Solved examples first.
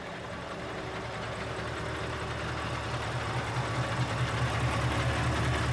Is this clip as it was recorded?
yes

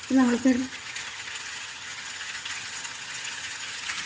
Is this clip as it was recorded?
no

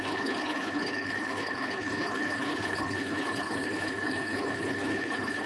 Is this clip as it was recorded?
no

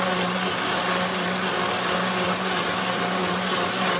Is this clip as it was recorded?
yes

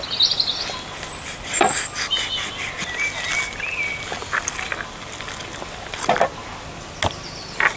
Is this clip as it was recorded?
yes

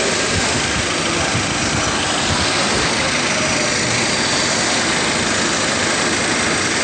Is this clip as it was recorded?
yes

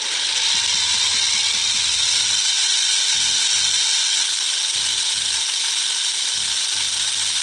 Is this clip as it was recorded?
yes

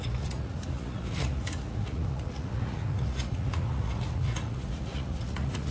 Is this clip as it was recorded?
no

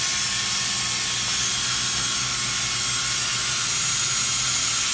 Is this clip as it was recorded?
yes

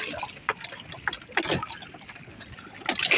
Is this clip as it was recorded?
yes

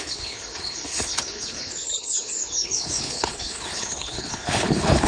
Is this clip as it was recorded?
no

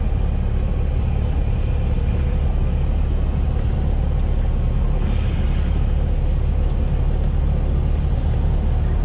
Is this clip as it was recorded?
yes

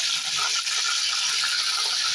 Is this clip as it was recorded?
yes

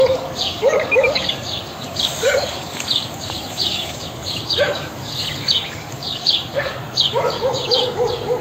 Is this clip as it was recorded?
no